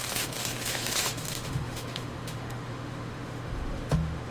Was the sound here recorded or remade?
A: remade